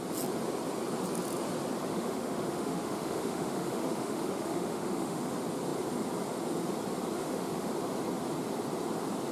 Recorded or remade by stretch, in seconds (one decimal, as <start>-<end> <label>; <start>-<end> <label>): 0.0-1.9 recorded; 1.9-5.2 remade; 5.2-7.2 recorded; 7.2-7.7 remade; 7.7-9.3 recorded